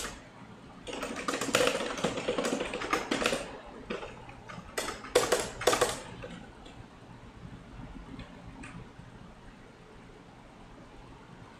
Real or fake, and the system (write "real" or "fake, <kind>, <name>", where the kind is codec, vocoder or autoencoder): real